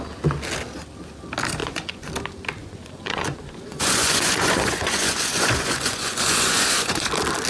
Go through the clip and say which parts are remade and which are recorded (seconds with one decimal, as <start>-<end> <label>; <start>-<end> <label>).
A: 0.0-1.6 recorded; 1.6-2.1 remade; 2.1-2.6 recorded; 2.6-7.1 remade; 7.1-7.5 recorded